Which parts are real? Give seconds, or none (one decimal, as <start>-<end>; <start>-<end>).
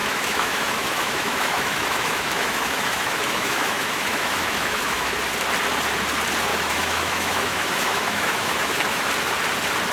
5.1-6.5; 9.1-9.9